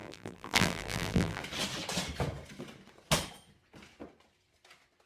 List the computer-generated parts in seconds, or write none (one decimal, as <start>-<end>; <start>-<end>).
0.0-1.4